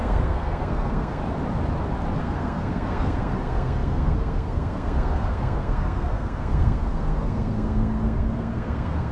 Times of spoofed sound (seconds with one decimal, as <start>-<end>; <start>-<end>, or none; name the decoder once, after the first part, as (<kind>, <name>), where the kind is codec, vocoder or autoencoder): 0.0-1.2 (codec, SNAC); 2.2-9.1